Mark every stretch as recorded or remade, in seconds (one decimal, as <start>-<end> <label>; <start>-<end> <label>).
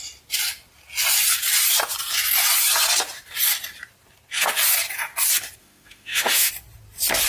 0.0-5.6 recorded; 5.6-6.5 remade; 6.5-7.3 recorded